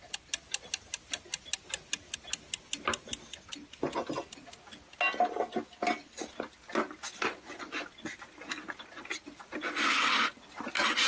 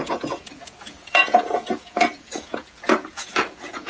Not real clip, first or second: second